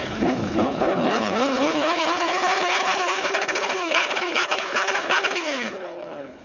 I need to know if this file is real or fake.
fake